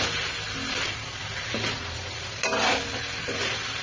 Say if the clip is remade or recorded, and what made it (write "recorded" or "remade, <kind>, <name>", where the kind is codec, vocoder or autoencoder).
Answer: recorded